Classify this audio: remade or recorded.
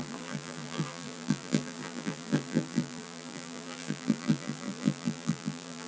remade